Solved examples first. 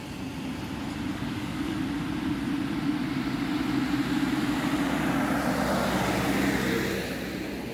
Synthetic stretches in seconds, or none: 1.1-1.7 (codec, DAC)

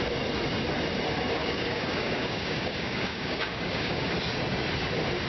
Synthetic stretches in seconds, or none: 1.4-4.1 (codec, DAC)

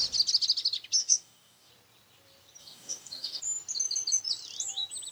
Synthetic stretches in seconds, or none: 1.0-1.7 (codec, DAC); 2.6-3.4